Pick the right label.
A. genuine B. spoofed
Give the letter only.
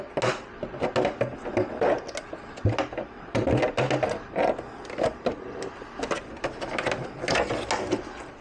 A